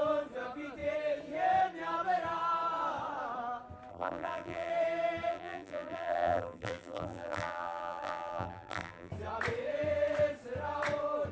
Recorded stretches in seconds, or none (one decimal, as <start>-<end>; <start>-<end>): 0.0-3.9; 4.7-5.3; 9.1-11.3